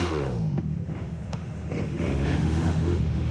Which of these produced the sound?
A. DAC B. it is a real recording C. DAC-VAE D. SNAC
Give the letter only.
C